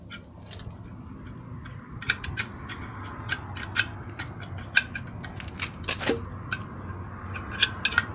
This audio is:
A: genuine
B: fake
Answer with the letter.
A